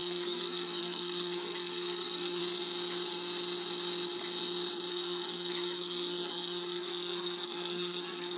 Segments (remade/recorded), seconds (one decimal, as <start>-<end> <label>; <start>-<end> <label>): 0.0-2.4 remade; 2.4-4.9 recorded; 4.9-8.4 remade